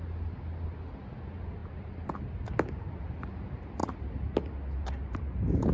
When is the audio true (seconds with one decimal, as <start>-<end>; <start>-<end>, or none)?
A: 0.0-5.7